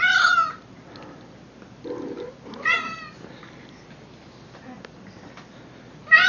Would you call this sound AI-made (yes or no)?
no